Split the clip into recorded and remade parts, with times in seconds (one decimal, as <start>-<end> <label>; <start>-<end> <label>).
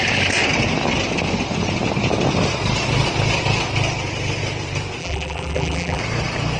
0.0-5.0 recorded; 5.0-6.0 remade; 6.0-6.6 recorded